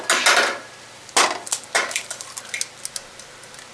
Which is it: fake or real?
real